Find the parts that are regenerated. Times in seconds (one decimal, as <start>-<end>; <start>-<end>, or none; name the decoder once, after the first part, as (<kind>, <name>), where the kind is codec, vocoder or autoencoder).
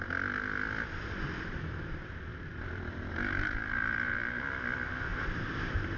2.3-4.4 (vocoder, BigVGAN v2); 5.1-5.6